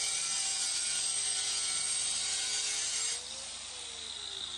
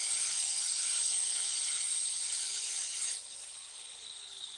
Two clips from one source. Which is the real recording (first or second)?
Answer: first